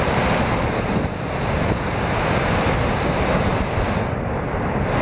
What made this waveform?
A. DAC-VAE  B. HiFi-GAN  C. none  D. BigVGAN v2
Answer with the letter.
C